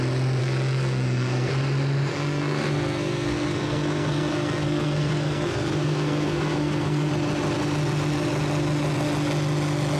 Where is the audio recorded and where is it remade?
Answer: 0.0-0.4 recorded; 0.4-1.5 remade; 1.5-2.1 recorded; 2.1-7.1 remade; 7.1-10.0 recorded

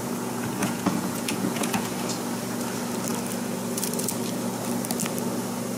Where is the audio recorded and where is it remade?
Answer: 0.0-0.6 recorded; 0.6-1.9 remade; 1.9-5.8 recorded

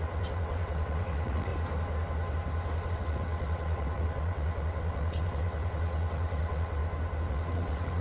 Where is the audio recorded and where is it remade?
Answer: 0.0-1.5 remade; 1.5-2.9 recorded; 2.9-6.8 remade; 6.8-7.3 recorded; 7.3-8.0 remade

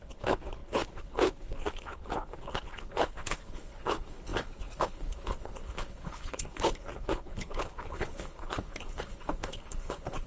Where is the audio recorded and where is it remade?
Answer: 0.0-10.3 remade

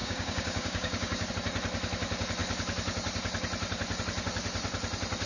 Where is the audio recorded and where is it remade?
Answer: 0.0-1.3 remade; 1.3-5.3 recorded

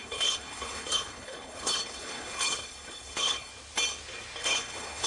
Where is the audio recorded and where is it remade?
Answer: 0.0-3.5 remade; 3.5-4.4 recorded; 4.4-5.1 remade

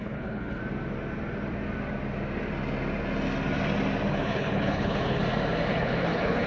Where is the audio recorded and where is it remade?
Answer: 0.0-0.6 remade; 0.6-4.1 recorded; 4.1-5.2 remade; 5.2-5.7 recorded; 5.7-6.5 remade

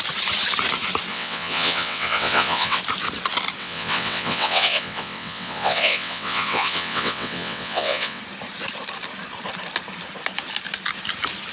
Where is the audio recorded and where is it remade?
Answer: 0.0-1.1 recorded; 1.1-2.8 remade; 2.8-3.6 recorded; 3.6-8.2 remade; 8.2-11.5 recorded